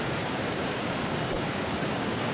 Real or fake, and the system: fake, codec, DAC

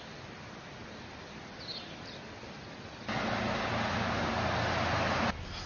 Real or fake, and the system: real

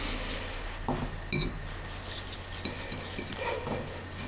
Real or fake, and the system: real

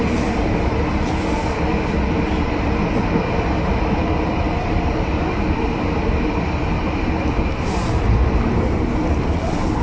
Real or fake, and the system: real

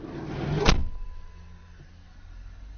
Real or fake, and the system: real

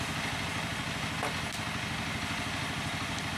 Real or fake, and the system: real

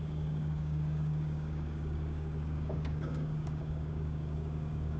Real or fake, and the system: fake, codec, DAC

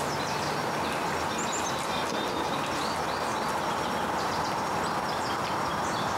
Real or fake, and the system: real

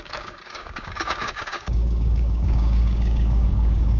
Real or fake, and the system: fake, codec, DAC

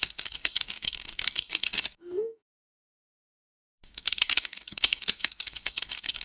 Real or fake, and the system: fake, codec, DAC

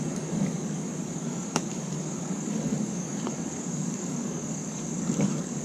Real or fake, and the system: fake, codec, DAC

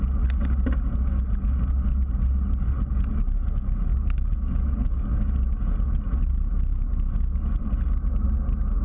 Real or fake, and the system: real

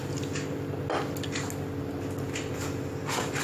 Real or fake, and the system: real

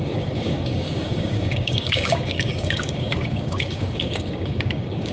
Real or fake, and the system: fake, codec, DAC